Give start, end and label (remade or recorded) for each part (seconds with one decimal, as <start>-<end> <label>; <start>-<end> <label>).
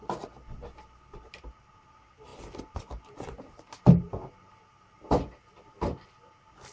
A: 0.0-6.7 recorded